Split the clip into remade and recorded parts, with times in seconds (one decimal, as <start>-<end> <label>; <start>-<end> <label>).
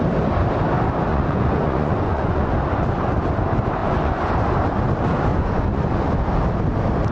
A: 0.0-1.1 recorded; 1.1-2.5 remade; 2.5-3.8 recorded; 3.8-4.3 remade; 4.3-5.3 recorded; 5.3-6.2 remade; 6.2-7.1 recorded